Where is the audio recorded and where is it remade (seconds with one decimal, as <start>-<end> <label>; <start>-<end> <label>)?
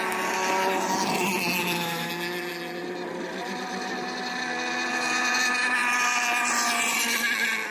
0.0-1.6 recorded; 1.6-2.1 remade; 2.1-7.7 recorded